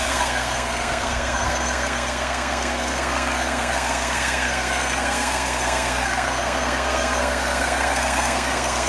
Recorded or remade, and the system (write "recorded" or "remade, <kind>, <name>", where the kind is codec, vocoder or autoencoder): remade, codec, SNAC